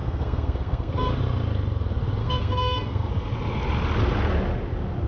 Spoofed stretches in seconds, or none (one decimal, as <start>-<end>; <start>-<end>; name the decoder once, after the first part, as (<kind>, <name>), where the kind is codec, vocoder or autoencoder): 0.0-0.9 (codec, SNAC); 2.2-3.1